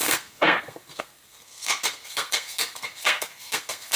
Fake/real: fake